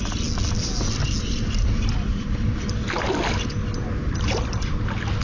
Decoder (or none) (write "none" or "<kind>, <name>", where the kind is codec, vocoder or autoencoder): none